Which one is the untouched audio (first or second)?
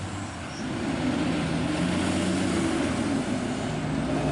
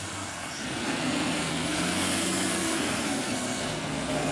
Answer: first